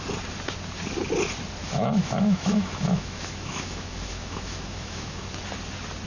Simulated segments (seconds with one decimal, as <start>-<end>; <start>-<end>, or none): 1.6-5.3